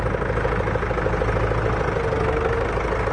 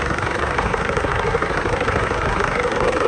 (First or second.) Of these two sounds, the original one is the first